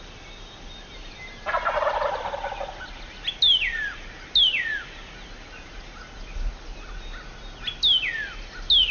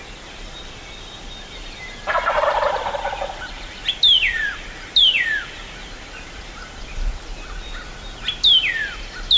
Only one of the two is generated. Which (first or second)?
second